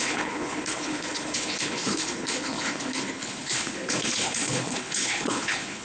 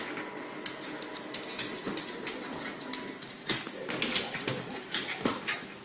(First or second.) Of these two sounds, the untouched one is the second